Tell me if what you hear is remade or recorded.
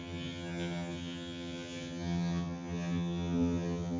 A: remade